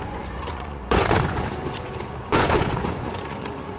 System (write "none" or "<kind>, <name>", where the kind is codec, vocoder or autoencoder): vocoder, Vocos